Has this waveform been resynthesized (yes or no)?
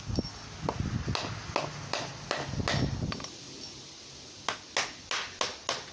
no